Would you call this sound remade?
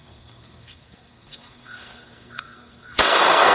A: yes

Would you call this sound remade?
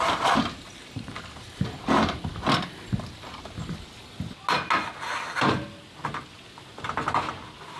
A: no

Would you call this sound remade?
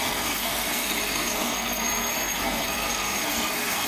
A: yes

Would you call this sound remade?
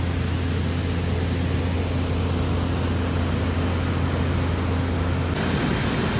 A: no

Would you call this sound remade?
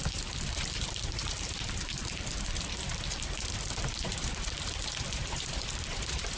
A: no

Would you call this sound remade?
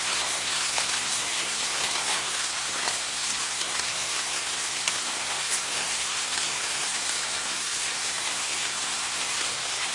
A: yes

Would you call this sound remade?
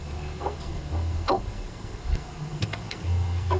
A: yes